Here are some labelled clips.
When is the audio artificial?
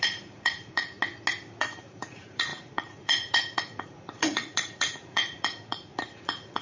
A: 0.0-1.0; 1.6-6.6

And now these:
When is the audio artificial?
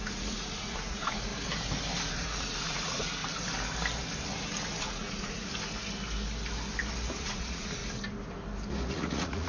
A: 0.0-1.3; 2.1-3.2; 4.8-5.5; 7.2-7.8; 8.9-9.5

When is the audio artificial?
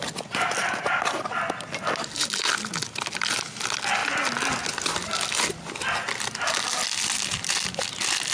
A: none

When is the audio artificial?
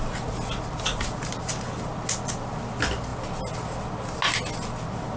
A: none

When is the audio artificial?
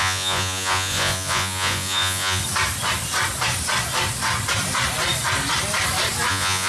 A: 0.0-2.4; 6.3-6.7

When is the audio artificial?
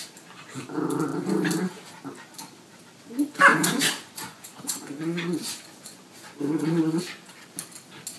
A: 3.5-7.5